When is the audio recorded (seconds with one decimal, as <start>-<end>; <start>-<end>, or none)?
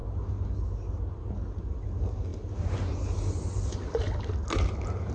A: 0.0-5.1